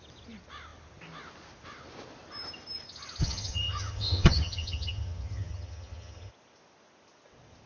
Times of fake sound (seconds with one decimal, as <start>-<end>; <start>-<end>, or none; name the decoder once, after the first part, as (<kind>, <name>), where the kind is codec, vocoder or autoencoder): 3.2-6.3 (vocoder, HiFi-GAN)